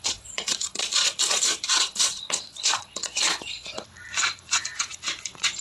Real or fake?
fake